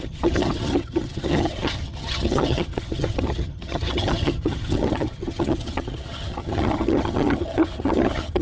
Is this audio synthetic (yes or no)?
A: yes